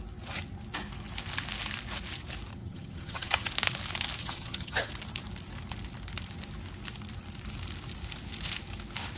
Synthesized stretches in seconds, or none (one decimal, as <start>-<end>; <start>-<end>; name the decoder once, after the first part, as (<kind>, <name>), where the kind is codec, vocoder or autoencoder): 2.5-3.5 (vocoder, HiFi-GAN); 4.2-4.9